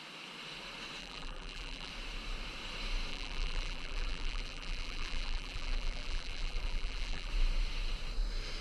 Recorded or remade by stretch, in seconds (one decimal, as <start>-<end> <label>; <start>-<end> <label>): 0.0-1.0 recorded; 1.0-1.9 remade; 1.9-3.1 recorded; 3.1-7.3 remade; 7.3-8.6 recorded